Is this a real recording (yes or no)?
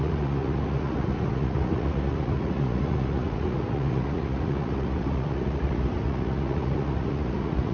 no